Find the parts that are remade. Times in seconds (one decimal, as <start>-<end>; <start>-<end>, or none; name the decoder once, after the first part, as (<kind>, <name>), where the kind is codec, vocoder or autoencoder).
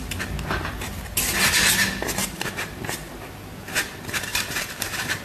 2.2-3.9 (vocoder, BigVGAN v2); 4.3-5.2